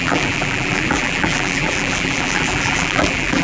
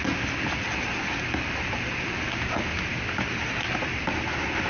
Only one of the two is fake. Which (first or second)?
first